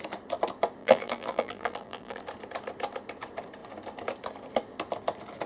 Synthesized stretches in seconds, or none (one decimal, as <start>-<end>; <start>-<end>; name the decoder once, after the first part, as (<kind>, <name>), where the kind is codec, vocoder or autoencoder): 0.8-2.2 (vocoder, BigVGAN v2)